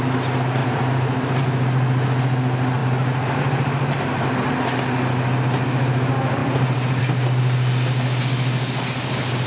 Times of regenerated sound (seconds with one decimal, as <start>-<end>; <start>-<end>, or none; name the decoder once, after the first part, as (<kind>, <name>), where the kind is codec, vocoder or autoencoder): 0.6-1.4 (vocoder, BigVGAN v2); 6.4-7.0